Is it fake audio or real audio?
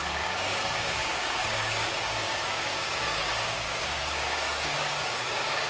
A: fake